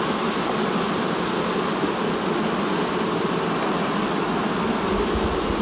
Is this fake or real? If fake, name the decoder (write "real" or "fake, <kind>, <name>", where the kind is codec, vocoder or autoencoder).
real